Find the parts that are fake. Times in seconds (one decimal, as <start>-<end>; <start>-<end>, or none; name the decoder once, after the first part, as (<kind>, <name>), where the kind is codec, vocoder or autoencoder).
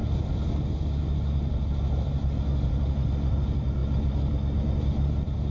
none